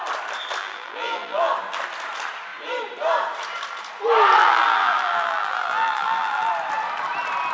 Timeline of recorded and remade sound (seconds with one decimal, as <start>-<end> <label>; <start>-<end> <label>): 0.0-0.6 recorded; 0.6-1.5 remade; 1.5-4.4 recorded; 4.4-6.5 remade; 6.5-7.5 recorded